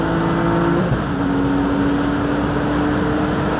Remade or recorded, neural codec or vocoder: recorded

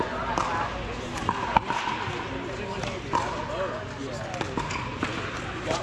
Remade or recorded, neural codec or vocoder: recorded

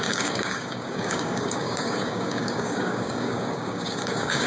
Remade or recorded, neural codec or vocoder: remade, codec, DAC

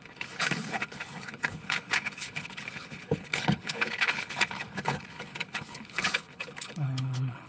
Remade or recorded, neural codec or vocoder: remade, codec, HILCodec